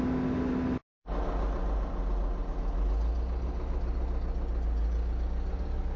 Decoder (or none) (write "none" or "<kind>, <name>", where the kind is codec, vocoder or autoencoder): none